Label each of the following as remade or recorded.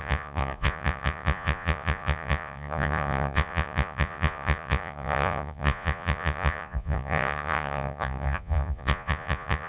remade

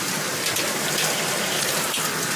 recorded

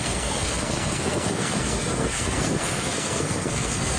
remade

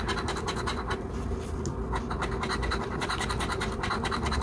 recorded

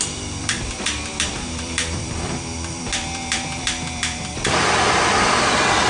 remade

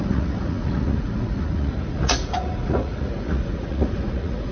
remade